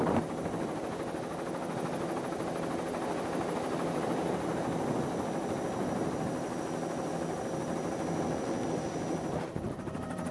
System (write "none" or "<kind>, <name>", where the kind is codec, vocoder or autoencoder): none